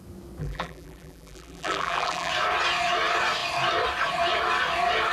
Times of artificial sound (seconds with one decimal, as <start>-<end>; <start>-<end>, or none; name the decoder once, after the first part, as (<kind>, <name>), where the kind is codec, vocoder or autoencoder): 0.4-2.3 (vocoder, BigVGAN v2)

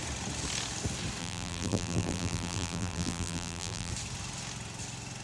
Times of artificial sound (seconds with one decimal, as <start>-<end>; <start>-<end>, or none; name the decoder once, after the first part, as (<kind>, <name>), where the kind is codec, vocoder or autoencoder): 1.2-3.9 (vocoder, BigVGAN v2)

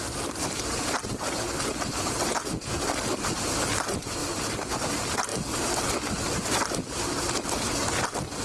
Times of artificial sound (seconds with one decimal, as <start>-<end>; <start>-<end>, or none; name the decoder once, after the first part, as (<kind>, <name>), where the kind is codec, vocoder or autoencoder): 4.2-4.8 (vocoder, BigVGAN v2)

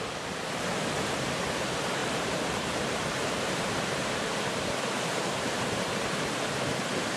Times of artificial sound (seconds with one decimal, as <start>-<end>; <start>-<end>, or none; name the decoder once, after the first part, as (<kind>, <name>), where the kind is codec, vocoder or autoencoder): 2.0-5.9 (vocoder, BigVGAN v2)

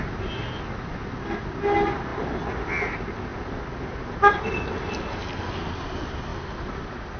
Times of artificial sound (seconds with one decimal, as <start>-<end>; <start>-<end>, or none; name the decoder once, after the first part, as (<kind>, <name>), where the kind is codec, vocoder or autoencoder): none

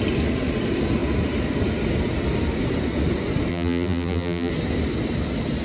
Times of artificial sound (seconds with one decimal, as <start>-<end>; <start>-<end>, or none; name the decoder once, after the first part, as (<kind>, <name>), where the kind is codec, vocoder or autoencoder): 3.5-4.5 (vocoder, BigVGAN v2)